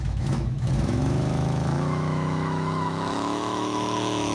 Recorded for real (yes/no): no